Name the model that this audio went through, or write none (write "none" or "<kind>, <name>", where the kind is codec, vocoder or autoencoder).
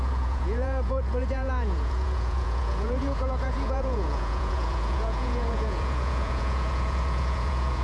vocoder, Vocos